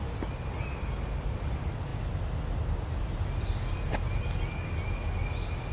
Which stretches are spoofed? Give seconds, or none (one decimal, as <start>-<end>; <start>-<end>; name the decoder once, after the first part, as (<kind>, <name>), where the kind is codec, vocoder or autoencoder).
none